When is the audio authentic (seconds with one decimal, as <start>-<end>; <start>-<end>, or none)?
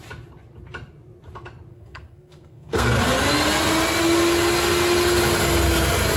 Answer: 0.0-1.7; 3.0-6.2